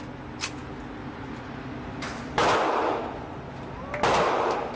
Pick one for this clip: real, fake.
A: real